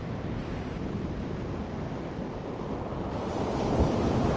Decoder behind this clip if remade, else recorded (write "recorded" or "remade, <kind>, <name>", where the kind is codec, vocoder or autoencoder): remade, vocoder, BigVGAN v2